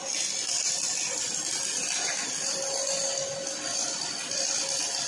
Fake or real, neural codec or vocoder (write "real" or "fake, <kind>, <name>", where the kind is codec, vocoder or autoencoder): real